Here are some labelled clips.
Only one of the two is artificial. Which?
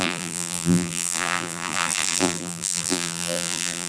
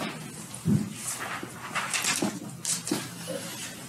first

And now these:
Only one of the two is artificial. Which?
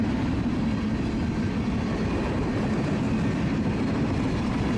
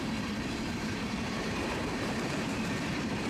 second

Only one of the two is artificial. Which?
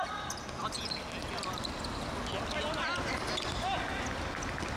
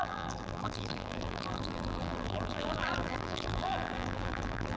second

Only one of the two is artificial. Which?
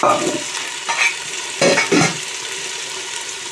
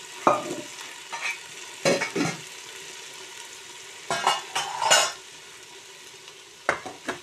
first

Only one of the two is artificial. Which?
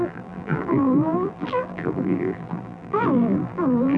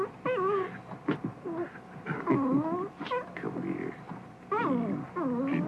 first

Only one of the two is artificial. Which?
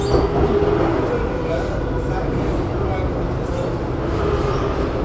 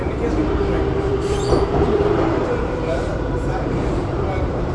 second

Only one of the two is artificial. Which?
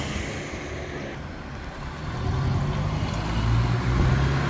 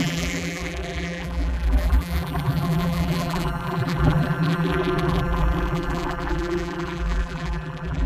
second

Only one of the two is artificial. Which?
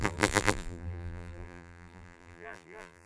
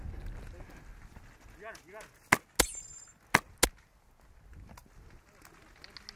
first